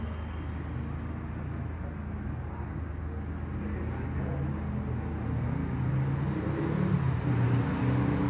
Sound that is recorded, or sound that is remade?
recorded